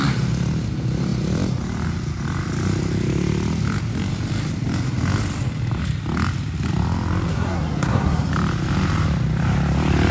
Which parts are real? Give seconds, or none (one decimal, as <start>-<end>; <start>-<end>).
0.0-7.3; 8.3-10.1

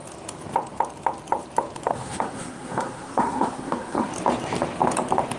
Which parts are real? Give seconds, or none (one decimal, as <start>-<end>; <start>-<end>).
0.0-1.9; 4.1-5.4

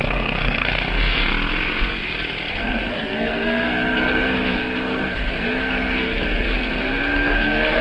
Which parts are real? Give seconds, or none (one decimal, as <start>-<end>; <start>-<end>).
1.3-2.5

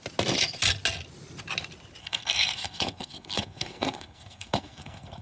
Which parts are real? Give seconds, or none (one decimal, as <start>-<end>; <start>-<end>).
0.0-2.0

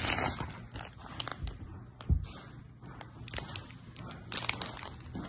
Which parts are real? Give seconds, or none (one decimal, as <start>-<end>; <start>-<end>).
0.0-5.3

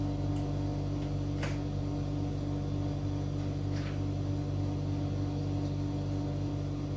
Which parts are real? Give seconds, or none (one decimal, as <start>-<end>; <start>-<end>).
0.0-7.0

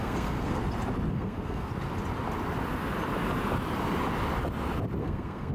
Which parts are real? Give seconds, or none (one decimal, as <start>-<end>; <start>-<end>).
0.6-1.1; 1.7-5.0